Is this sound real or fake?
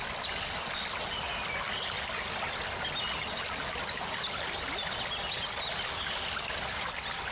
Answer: real